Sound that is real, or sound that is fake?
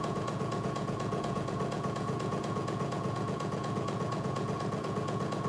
fake